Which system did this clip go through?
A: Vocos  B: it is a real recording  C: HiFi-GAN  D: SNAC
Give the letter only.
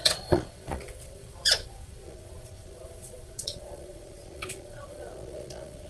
A